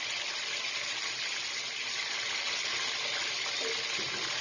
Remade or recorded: recorded